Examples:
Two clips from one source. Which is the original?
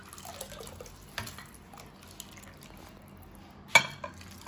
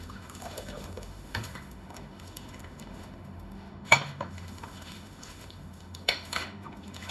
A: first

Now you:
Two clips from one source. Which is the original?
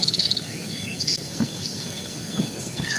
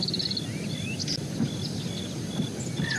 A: second